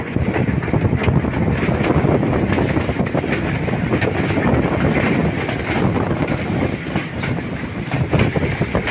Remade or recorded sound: recorded